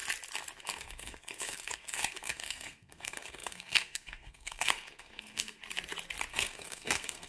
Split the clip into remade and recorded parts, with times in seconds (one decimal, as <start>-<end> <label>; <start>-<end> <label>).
0.0-0.6 recorded; 0.6-5.6 remade; 5.6-6.3 recorded; 6.3-7.3 remade